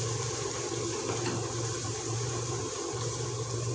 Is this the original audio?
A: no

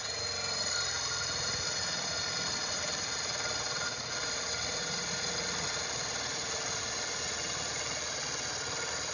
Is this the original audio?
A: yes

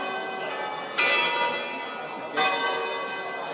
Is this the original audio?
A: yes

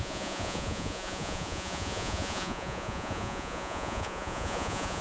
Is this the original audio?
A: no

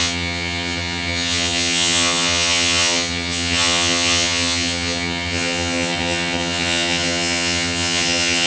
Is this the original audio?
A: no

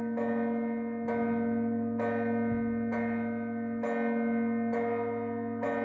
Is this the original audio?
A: yes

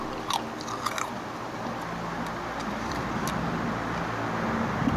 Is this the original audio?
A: yes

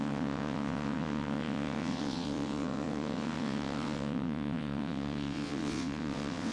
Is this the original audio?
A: no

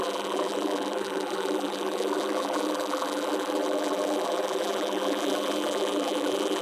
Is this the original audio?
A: no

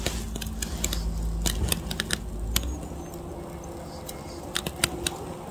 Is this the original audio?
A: yes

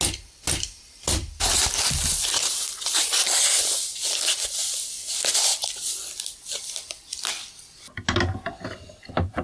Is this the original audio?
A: yes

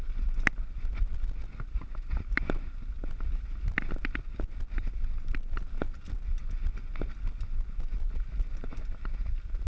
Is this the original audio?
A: yes